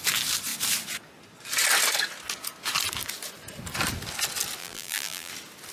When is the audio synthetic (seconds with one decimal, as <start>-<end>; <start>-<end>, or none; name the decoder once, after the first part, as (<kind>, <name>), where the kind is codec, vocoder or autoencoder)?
4.6-5.3 (vocoder, BigVGAN v2)